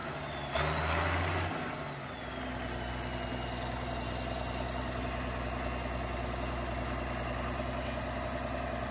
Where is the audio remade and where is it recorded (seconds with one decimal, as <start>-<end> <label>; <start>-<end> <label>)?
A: 0.0-8.9 recorded